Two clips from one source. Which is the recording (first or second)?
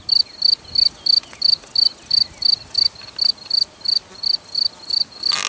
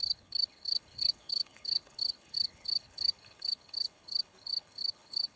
first